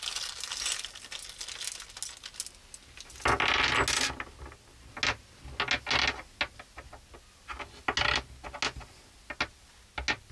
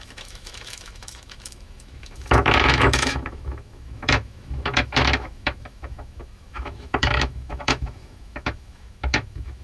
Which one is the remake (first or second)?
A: second